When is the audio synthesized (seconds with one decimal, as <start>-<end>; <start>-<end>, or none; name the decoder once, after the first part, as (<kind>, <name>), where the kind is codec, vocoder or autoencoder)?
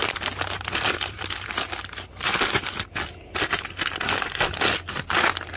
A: 0.0-1.7 (vocoder, BigVGAN v2)